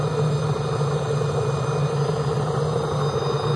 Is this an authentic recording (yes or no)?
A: yes